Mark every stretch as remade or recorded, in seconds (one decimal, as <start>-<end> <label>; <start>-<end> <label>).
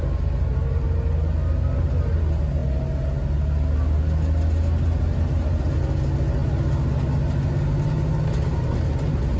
0.0-9.4 recorded